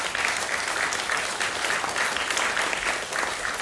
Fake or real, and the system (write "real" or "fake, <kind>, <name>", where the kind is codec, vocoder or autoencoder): real